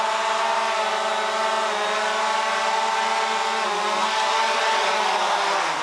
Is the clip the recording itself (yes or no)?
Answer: yes